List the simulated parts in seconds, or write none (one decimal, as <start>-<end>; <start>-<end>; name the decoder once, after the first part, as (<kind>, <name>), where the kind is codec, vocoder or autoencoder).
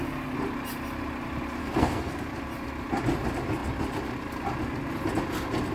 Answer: 1.6-2.2 (codec, SNAC)